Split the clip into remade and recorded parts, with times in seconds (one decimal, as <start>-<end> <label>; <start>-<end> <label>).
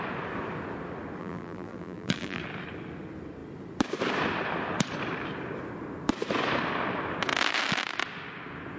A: 0.0-1.2 recorded; 1.2-2.4 remade; 2.4-8.8 recorded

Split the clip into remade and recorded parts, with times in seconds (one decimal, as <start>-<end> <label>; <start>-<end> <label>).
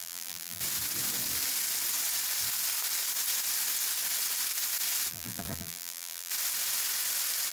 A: 0.0-0.6 remade; 0.6-5.1 recorded; 5.1-6.3 remade; 6.3-7.5 recorded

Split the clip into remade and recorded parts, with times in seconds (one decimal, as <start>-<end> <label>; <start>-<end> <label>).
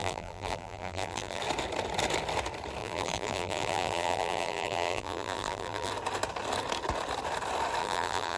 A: 0.0-1.4 remade; 1.4-2.8 recorded; 2.8-5.9 remade; 5.9-7.8 recorded; 7.8-8.4 remade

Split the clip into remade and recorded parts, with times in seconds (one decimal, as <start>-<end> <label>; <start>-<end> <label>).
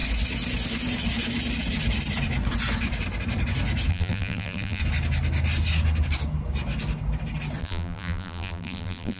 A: 0.0-3.9 recorded; 3.9-4.8 remade; 4.8-7.6 recorded; 7.6-9.2 remade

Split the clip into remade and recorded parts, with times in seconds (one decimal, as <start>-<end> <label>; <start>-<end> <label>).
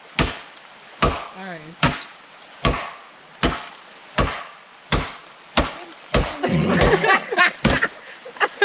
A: 0.0-8.6 recorded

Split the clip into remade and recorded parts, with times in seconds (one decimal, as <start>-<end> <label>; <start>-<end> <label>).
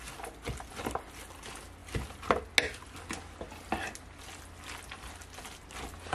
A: 0.0-6.1 recorded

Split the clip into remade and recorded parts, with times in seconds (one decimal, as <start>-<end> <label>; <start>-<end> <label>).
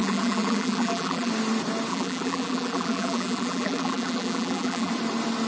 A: 0.0-1.3 remade; 1.3-1.9 recorded; 1.9-4.9 remade; 4.9-5.5 recorded